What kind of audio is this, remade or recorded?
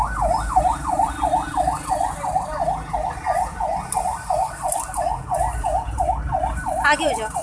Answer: recorded